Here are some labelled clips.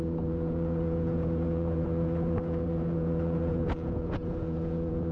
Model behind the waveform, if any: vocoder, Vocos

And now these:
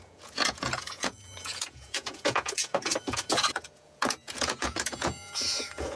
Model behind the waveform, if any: vocoder, Vocos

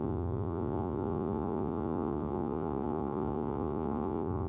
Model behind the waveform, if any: vocoder, Vocos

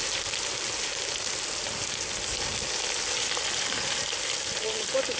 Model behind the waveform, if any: none